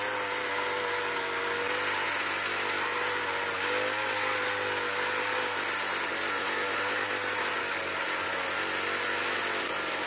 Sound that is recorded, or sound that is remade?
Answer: recorded